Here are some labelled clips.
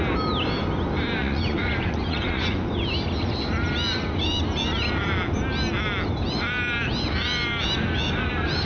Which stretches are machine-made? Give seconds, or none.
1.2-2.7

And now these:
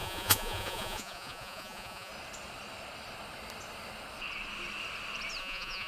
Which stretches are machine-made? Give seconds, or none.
0.0-2.1; 5.4-5.9

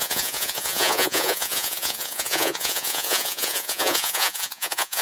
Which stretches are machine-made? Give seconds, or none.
0.0-5.0